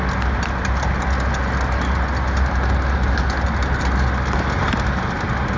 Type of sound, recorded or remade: recorded